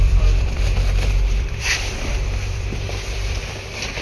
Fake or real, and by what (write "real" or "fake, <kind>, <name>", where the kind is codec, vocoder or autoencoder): fake, vocoder, BigVGAN v2